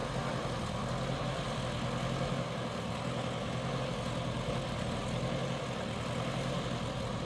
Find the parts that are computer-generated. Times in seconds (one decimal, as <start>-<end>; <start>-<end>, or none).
none